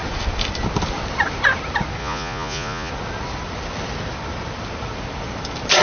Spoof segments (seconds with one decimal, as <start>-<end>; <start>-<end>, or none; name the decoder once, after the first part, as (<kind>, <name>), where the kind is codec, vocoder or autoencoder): 2.0-2.9 (vocoder, Vocos)